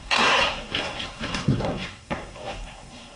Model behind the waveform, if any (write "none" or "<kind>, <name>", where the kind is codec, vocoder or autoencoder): codec, SNAC